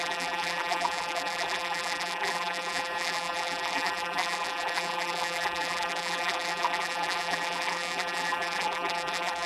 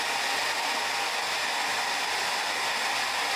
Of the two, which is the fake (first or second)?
first